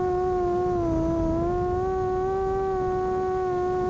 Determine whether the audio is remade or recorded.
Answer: recorded